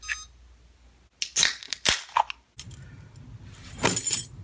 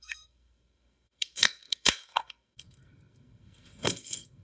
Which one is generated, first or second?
second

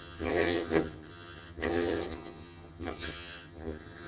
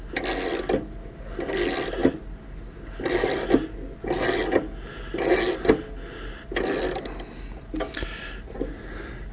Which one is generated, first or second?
first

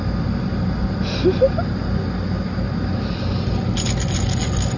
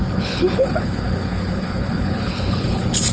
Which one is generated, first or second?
second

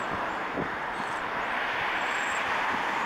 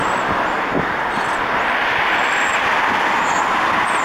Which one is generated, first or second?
first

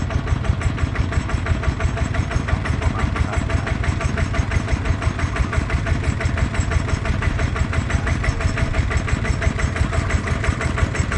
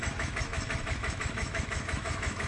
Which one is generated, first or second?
second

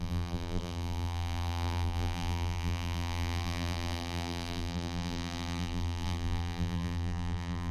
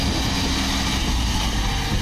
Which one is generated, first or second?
first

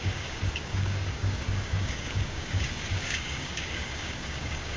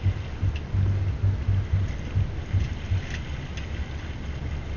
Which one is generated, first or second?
first